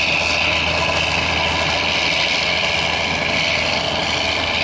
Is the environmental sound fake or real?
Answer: real